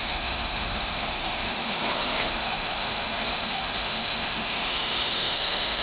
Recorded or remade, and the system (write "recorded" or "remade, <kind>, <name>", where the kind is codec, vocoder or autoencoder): remade, autoencoder, DAC-VAE